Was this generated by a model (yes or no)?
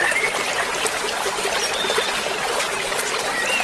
no